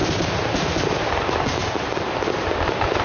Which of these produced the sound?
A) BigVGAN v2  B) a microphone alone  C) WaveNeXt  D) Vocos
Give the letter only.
B